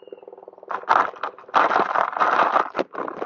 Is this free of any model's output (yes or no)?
yes